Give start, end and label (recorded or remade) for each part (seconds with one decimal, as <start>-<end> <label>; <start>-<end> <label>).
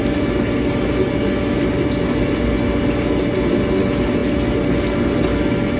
0.0-5.8 recorded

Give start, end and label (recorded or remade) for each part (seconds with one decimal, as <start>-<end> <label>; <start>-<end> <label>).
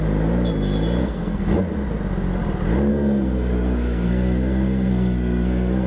0.0-1.0 recorded; 1.0-1.6 remade; 1.6-2.9 recorded; 2.9-5.9 remade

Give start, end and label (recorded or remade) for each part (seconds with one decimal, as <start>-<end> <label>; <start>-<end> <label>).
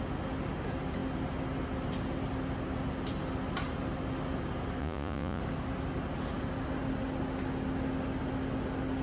0.0-4.8 recorded; 4.8-5.4 remade; 5.4-9.0 recorded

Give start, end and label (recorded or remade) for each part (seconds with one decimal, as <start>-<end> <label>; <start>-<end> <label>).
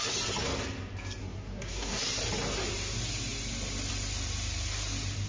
0.0-1.2 recorded; 1.2-2.0 remade; 2.0-5.3 recorded